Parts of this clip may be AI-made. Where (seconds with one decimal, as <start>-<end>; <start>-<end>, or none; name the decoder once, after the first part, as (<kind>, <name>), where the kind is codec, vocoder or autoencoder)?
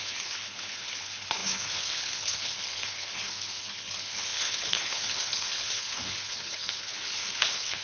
0.0-7.8 (codec, HILCodec)